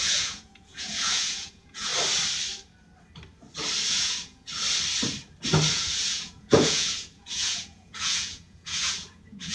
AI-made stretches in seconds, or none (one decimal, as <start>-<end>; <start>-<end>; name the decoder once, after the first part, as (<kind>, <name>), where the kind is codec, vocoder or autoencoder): 0.0-1.9 (vocoder, Vocos); 3.9-4.5; 5.7-9.5